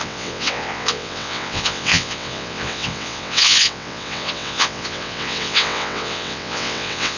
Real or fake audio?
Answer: fake